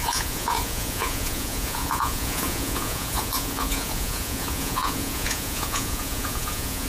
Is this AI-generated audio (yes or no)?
yes